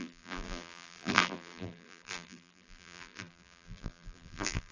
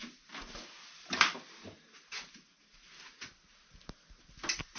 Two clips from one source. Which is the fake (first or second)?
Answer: first